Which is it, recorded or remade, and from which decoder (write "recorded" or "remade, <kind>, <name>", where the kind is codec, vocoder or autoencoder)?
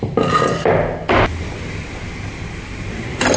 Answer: recorded